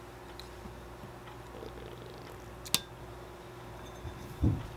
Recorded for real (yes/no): yes